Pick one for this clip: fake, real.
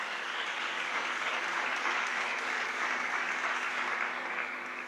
fake